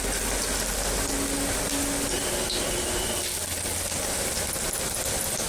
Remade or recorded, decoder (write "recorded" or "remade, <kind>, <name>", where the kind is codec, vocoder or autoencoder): recorded